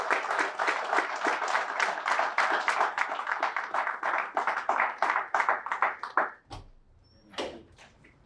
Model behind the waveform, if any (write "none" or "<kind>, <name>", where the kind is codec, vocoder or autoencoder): vocoder, BigVGAN v2